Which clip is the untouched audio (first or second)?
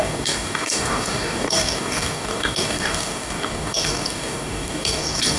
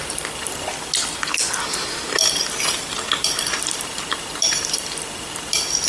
second